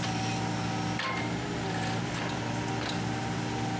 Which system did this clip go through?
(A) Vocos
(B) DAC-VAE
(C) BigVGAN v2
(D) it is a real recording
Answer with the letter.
D